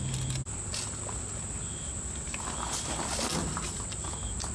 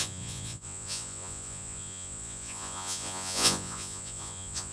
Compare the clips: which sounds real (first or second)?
first